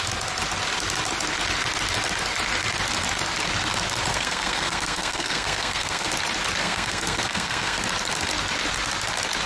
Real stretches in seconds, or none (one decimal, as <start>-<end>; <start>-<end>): 0.0-4.1; 6.1-6.6; 7.8-9.5